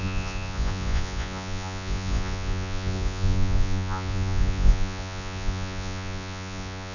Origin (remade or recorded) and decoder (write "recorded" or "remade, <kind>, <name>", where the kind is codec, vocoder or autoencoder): remade, vocoder, Vocos